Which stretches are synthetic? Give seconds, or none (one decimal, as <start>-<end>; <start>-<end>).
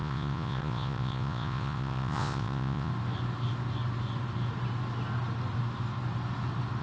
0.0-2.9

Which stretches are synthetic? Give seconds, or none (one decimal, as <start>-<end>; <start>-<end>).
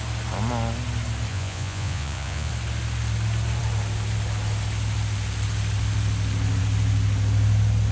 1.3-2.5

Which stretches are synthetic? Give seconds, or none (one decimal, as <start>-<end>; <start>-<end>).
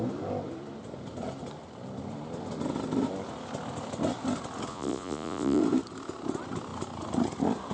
4.7-5.6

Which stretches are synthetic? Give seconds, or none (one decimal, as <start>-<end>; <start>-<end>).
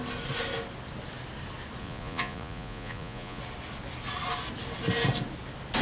1.8-3.4